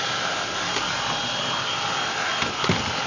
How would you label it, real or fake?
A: real